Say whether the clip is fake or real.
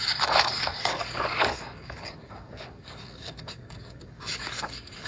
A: fake